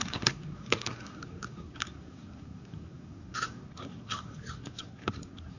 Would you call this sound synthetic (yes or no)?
yes